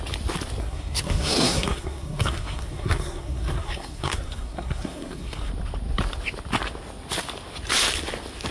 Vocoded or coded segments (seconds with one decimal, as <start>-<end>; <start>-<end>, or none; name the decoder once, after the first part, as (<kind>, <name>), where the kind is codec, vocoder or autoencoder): 0.6-5.5 (codec, SNAC)